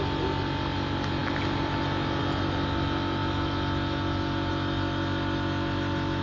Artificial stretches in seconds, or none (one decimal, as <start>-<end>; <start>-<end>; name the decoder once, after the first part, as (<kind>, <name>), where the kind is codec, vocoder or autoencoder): none